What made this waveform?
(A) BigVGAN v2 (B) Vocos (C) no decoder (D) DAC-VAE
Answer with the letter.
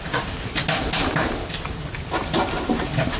C